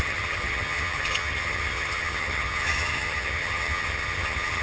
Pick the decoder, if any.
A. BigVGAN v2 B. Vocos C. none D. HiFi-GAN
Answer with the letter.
D